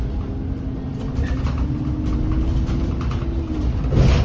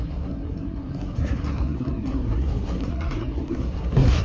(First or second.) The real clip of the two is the first